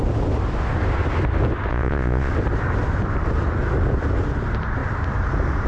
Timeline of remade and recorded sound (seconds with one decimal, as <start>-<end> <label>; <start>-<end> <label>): 0.0-1.7 recorded; 1.7-2.3 remade; 2.3-5.7 recorded